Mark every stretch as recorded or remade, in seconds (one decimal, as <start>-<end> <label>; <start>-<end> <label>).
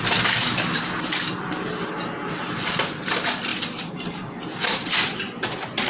0.0-5.9 recorded